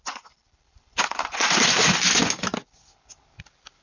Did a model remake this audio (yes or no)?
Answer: no